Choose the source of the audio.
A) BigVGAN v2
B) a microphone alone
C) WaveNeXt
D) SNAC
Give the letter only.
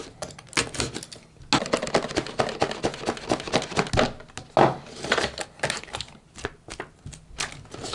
B